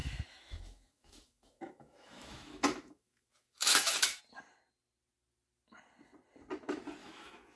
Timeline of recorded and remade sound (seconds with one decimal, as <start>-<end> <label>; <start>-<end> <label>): 0.0-4.2 remade; 4.2-7.0 recorded; 7.0-7.6 remade